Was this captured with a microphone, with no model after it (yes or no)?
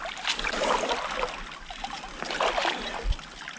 yes